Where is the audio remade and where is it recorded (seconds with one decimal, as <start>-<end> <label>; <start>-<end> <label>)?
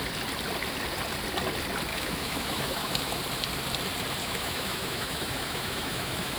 0.0-1.9 recorded; 1.9-3.2 remade; 3.2-4.2 recorded; 4.2-6.4 remade